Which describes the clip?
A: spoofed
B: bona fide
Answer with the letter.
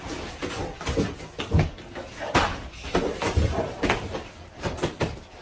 B